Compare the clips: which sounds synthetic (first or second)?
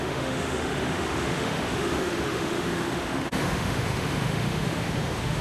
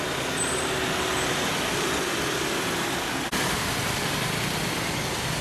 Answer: first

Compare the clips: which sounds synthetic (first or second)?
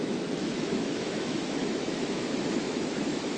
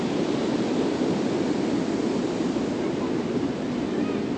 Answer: first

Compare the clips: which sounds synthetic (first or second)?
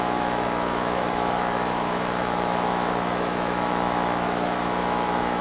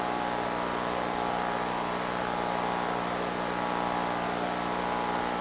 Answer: first